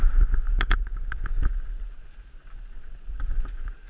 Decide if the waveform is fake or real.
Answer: real